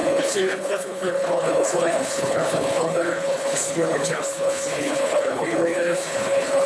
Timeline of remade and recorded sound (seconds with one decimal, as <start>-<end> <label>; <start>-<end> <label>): 0.0-6.7 remade